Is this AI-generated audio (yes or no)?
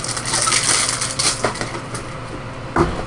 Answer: no